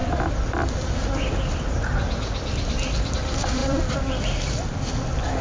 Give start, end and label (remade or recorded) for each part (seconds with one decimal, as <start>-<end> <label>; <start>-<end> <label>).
0.0-5.4 recorded